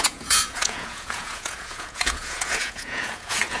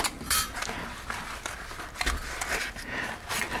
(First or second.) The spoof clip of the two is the first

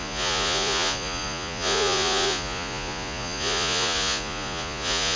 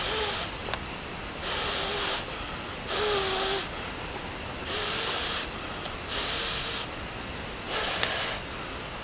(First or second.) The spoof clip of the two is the first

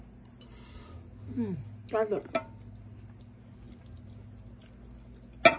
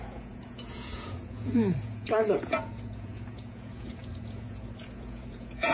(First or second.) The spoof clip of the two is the second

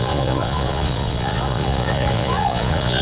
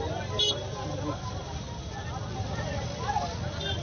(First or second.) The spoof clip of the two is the first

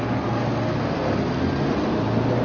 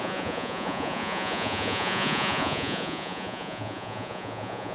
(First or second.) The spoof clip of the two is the second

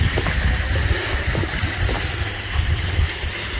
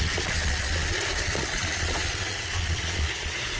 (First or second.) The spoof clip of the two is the second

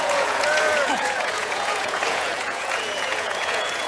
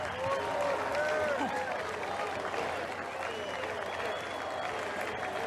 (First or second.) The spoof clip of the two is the first